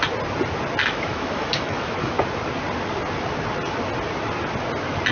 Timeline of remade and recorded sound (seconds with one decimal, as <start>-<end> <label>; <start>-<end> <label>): 0.0-0.8 recorded; 0.8-2.2 remade; 2.2-5.1 recorded